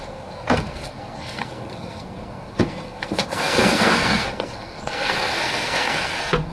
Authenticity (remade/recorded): remade